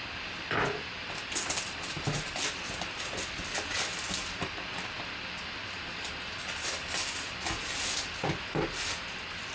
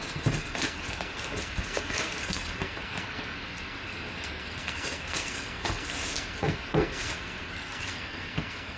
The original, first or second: first